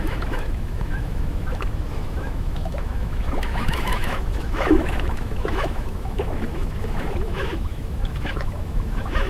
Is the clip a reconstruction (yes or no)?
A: yes